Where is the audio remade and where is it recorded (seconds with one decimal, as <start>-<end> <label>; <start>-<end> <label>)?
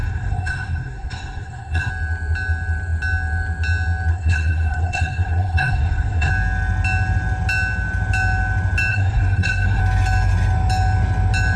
0.0-1.9 remade; 1.9-4.1 recorded; 4.1-6.3 remade; 6.3-8.9 recorded; 8.9-9.8 remade; 9.8-11.6 recorded